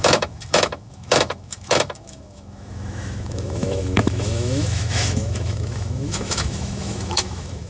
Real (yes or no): no